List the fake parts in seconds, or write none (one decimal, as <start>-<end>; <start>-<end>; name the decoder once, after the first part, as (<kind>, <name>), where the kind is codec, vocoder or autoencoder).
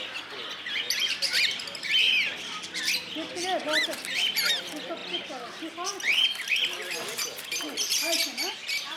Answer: none